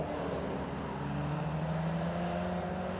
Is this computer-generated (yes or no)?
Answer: no